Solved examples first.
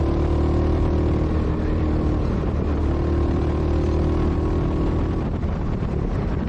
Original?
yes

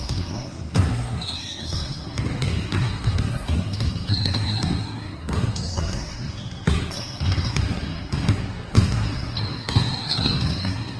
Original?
no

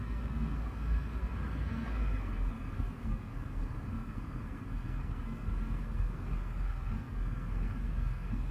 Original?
no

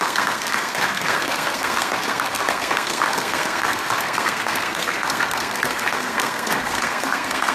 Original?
no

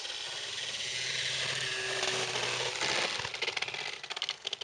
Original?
yes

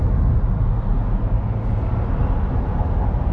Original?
yes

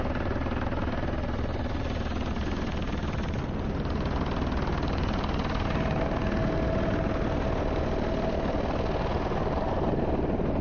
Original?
yes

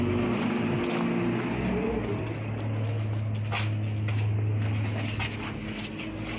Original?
yes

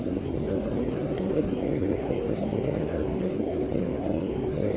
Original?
no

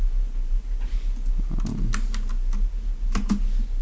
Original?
yes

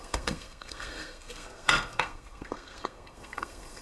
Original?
no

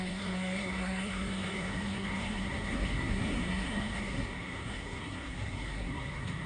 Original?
no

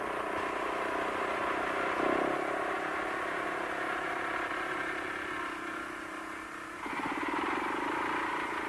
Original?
yes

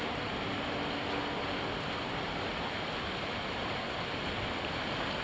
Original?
yes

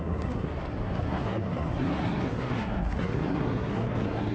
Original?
no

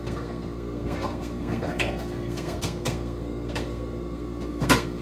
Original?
no